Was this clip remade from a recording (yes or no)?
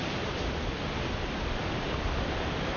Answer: no